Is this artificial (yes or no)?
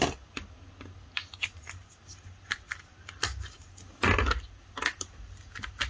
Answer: no